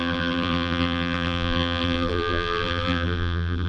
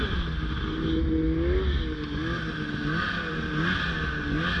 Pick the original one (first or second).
second